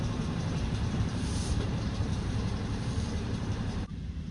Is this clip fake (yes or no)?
yes